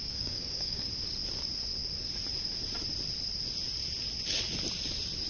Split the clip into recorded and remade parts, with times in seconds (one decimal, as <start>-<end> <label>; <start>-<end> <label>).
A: 0.0-0.9 remade; 0.9-5.3 recorded